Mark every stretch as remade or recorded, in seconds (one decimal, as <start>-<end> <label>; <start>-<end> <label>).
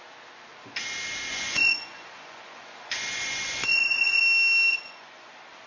0.0-1.3 recorded; 1.3-4.2 remade; 4.2-4.7 recorded; 4.7-5.3 remade; 5.3-5.7 recorded